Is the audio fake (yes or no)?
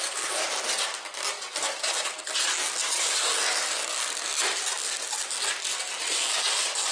no